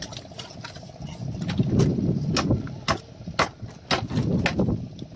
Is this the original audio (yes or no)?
yes